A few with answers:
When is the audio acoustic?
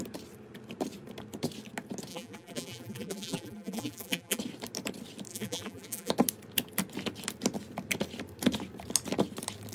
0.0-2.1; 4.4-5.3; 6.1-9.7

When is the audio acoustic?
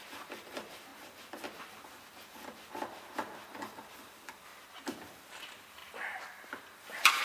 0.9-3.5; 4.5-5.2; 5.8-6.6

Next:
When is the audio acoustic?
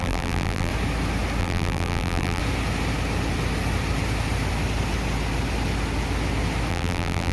0.7-1.4; 2.4-6.7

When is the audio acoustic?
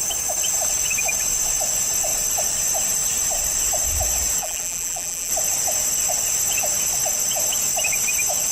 0.0-4.4; 5.3-8.5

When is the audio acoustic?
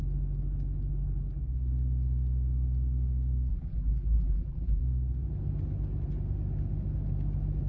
0.0-3.5; 4.8-7.7